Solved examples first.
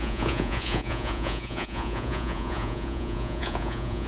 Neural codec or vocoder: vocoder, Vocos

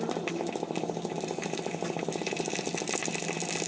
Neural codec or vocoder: none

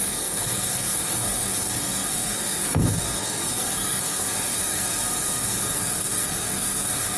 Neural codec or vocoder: codec, SNAC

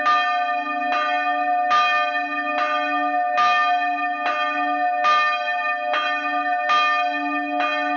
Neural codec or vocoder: none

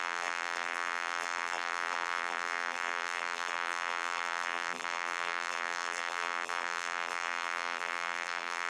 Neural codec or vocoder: vocoder, BigVGAN v2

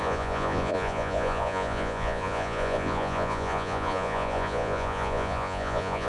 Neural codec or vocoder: vocoder, Vocos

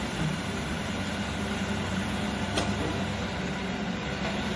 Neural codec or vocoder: vocoder, BigVGAN v2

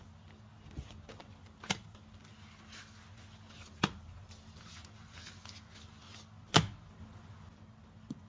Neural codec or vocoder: none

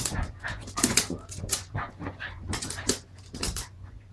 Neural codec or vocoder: vocoder, Vocos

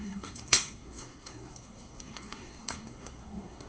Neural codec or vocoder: codec, SNAC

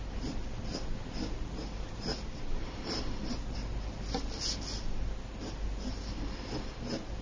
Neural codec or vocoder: none